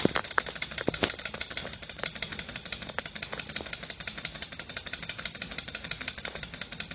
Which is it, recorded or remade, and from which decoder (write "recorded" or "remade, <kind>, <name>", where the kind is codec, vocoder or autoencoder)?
recorded